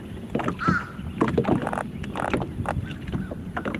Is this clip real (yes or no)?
yes